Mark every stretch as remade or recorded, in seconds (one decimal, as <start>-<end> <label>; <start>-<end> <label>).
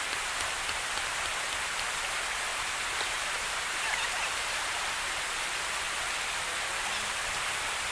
0.0-2.5 recorded; 2.5-5.5 remade; 5.5-7.9 recorded